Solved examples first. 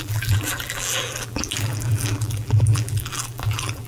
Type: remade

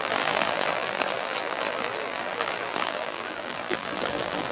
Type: remade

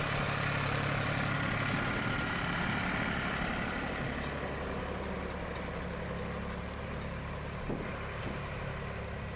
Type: recorded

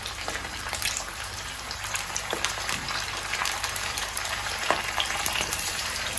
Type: remade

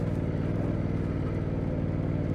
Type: recorded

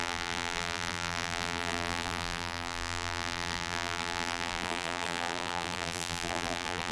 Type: remade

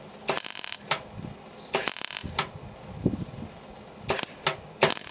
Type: recorded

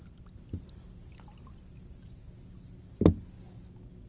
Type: recorded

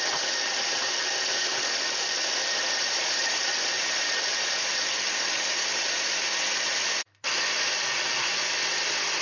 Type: remade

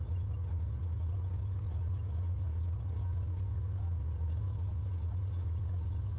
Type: recorded